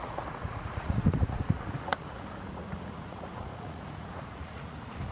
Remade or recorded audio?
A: remade